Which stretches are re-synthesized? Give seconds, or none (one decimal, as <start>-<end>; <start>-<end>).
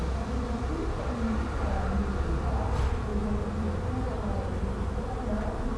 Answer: none